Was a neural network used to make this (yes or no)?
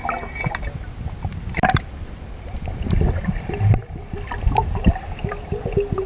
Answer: no